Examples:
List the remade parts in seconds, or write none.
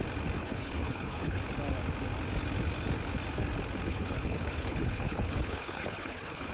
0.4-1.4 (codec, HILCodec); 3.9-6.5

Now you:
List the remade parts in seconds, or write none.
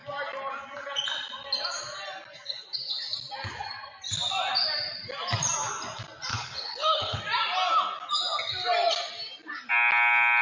6.3-7.2 (codec, HILCodec)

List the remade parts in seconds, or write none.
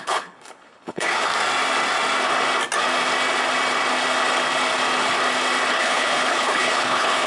0.0-1.3 (codec, HILCodec); 5.7-7.3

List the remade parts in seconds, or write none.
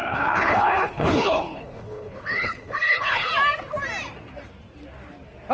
0.0-3.3 (codec, HILCodec)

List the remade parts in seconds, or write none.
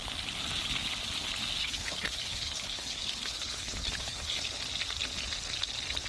1.6-4.4 (codec, HILCodec)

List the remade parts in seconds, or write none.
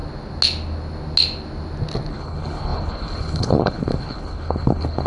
2.1-5.1 (codec, HILCodec)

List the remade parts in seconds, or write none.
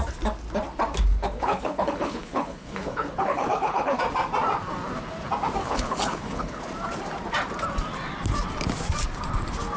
1.1-4.0 (codec, HILCodec); 5.6-6.6